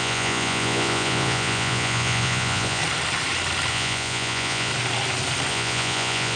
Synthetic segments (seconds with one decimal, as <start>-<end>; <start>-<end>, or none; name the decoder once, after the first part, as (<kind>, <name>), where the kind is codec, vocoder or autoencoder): 0.0-2.8 (vocoder, Vocos); 3.7-4.7; 5.5-6.4